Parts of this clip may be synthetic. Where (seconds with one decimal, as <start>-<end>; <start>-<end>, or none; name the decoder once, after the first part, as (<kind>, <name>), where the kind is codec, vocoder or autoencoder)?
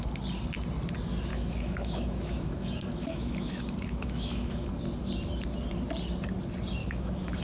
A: 1.3-4.7 (autoencoder, DAC-VAE); 6.8-7.4